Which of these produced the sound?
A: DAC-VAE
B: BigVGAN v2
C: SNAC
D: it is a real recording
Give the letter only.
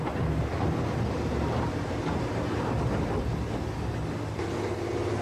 D